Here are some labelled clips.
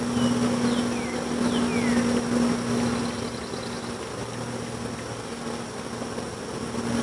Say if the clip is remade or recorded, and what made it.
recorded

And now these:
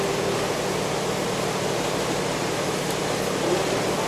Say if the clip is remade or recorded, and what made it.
recorded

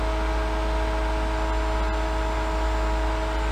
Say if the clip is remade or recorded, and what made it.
recorded